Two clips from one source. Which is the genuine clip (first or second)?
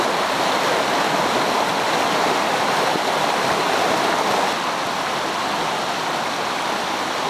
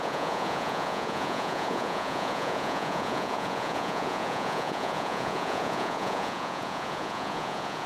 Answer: first